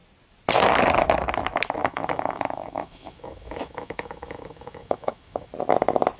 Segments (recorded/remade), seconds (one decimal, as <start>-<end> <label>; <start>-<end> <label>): 0.0-1.8 recorded; 1.8-5.5 remade; 5.5-6.2 recorded